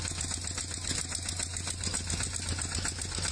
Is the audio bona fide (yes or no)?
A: yes